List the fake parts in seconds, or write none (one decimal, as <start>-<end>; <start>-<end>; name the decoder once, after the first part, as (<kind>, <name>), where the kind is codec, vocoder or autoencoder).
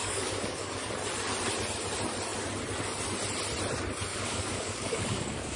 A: 0.0-0.9 (codec, DAC); 4.1-5.6